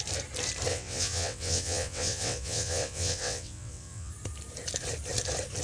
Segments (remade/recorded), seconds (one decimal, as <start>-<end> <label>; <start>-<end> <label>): 0.0-0.7 recorded; 0.7-4.1 remade; 4.1-5.6 recorded